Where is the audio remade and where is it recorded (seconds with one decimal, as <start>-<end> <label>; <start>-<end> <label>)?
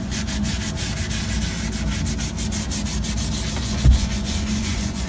0.0-0.5 remade; 0.5-3.6 recorded; 3.6-5.1 remade